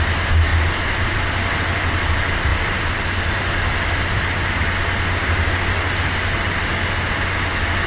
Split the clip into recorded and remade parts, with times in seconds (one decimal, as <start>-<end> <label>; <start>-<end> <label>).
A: 0.0-0.5 recorded; 0.5-1.3 remade; 1.3-2.5 recorded; 2.5-4.6 remade; 4.6-7.9 recorded